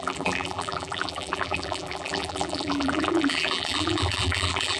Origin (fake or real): fake